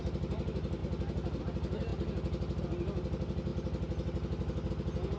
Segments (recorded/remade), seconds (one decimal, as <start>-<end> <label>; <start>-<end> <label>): 0.0-5.2 recorded